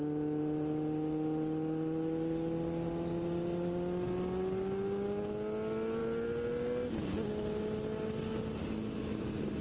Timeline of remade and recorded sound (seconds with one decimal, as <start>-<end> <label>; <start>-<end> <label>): 0.0-9.6 recorded